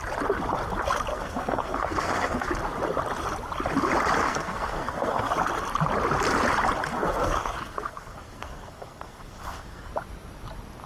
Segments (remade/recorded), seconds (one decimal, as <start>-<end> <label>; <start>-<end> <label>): 0.0-1.1 recorded; 1.1-2.5 remade; 2.5-4.2 recorded; 4.2-5.3 remade; 5.3-6.9 recorded; 6.9-9.9 remade; 9.9-10.9 recorded